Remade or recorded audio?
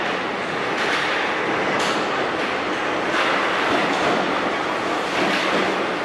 recorded